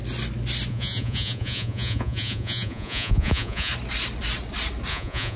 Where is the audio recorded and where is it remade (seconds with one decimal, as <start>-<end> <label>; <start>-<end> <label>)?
0.0-0.7 recorded; 0.7-3.7 remade; 3.7-4.9 recorded; 4.9-5.4 remade

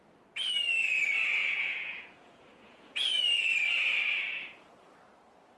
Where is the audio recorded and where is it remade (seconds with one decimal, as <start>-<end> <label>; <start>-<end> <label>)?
0.0-1.4 recorded; 1.4-3.2 remade; 3.2-5.6 recorded

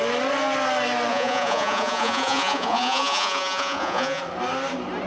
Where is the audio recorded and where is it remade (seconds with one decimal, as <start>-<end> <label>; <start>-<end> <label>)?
0.0-1.1 recorded; 1.1-4.2 remade; 4.2-5.1 recorded